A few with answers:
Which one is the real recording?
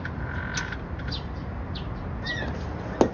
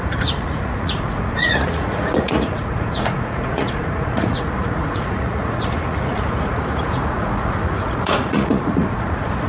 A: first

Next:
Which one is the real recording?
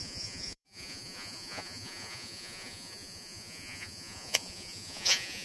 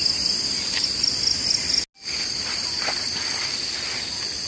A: second